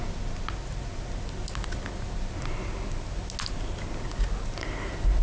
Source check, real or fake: real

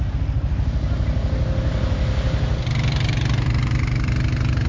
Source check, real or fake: real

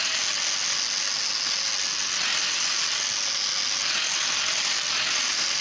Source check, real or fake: real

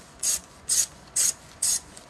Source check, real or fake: fake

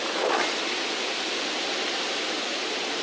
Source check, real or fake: real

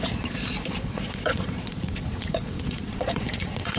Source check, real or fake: fake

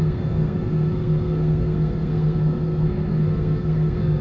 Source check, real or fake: fake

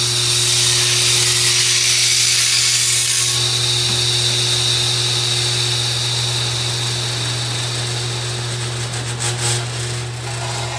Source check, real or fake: real